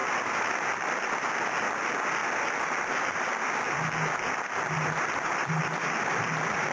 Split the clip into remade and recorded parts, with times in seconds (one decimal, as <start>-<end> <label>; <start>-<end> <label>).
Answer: 0.0-6.7 recorded